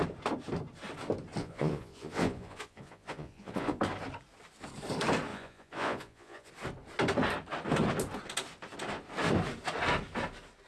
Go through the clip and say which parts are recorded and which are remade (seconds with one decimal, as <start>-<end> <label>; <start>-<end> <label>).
0.0-1.4 recorded; 1.4-3.8 remade; 3.8-5.3 recorded; 5.3-6.5 remade; 6.5-10.7 recorded